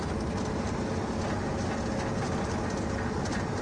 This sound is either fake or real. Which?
real